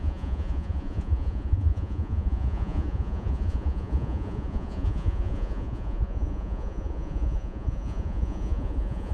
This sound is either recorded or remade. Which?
remade